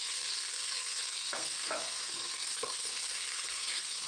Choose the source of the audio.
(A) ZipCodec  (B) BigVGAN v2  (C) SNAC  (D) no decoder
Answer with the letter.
C